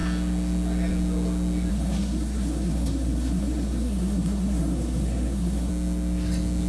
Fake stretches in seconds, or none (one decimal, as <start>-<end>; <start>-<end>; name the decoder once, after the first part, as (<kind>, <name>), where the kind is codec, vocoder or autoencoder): 1.7-5.7 (codec, SNAC)